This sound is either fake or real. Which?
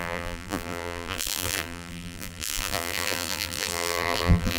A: fake